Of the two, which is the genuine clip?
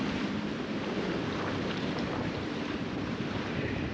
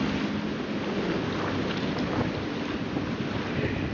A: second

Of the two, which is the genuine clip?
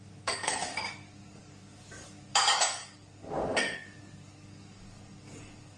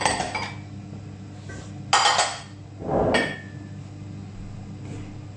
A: second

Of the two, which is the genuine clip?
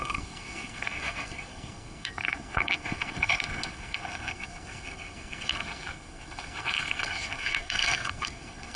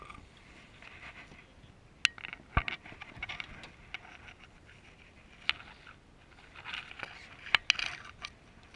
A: second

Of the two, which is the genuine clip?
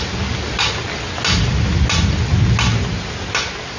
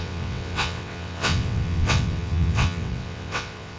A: first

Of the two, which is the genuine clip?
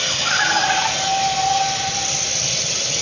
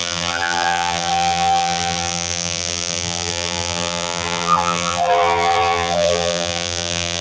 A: first